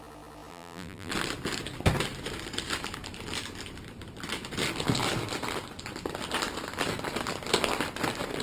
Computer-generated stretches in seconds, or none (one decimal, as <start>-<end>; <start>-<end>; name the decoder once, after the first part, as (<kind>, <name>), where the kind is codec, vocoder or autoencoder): 0.5-1.1 (vocoder, BigVGAN v2)